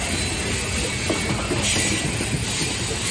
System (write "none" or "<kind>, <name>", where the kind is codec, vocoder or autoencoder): none